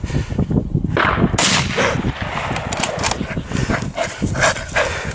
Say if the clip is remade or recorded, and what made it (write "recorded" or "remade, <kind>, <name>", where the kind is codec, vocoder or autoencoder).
recorded